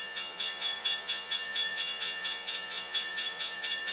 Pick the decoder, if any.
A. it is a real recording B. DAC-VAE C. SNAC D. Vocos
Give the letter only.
D